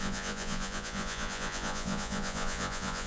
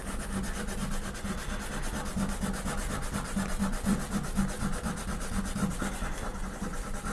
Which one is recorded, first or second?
second